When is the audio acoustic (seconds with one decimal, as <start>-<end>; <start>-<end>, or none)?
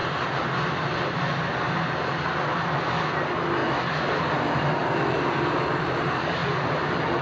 0.0-7.2